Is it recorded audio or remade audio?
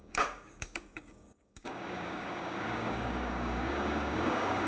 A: remade